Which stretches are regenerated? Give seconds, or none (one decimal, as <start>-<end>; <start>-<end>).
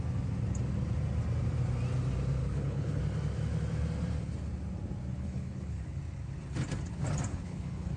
2.4-3.0; 5.1-6.0; 7.3-8.0